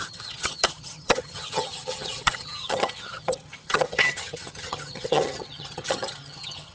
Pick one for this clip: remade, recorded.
remade